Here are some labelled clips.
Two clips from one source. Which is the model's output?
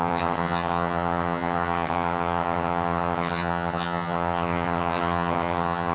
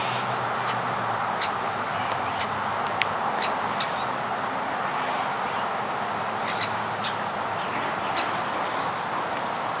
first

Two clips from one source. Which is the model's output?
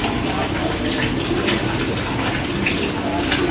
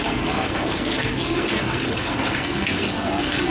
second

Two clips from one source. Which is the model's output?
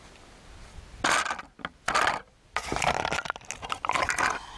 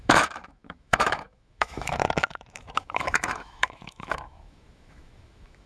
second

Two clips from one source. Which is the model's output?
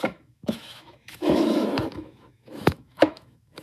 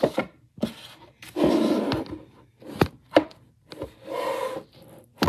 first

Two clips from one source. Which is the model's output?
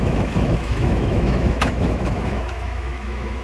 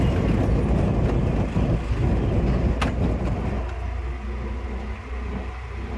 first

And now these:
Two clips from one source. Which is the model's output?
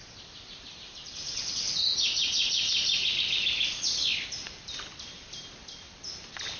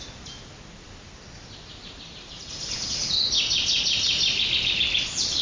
first